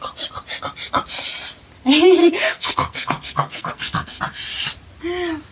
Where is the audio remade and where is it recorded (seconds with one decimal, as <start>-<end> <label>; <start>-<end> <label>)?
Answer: 0.0-2.2 recorded; 2.2-4.2 remade; 4.2-5.5 recorded